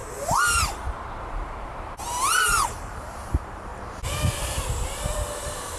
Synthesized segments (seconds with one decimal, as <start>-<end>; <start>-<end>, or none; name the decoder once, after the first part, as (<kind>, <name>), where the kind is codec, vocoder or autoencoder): 1.2-3.7 (vocoder, BigVGAN v2); 4.3-5.8